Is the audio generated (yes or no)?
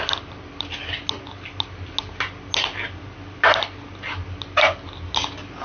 no